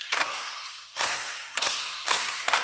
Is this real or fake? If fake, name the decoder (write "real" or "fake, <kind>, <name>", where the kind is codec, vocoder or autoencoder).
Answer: fake, codec, SNAC